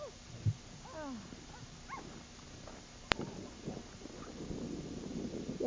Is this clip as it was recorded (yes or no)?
yes